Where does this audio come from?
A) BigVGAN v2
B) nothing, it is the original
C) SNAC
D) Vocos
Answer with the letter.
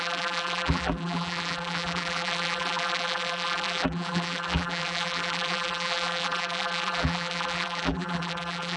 A